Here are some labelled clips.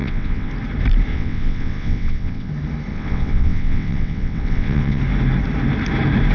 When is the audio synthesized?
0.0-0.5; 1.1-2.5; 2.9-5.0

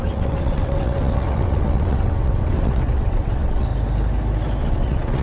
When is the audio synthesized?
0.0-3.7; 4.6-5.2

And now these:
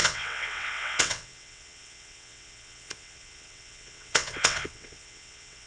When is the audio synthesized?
0.0-5.7

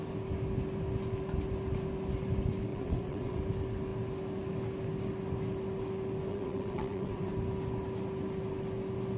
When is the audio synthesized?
2.7-3.4; 6.3-7.3

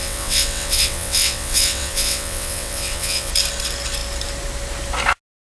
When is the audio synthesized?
0.0-3.3

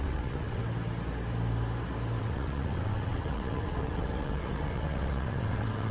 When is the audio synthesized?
0.0-0.6; 2.2-5.9

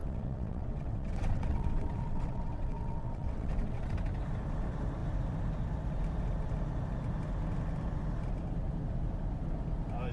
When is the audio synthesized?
0.0-3.9